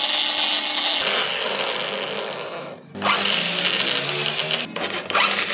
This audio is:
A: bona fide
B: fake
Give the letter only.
A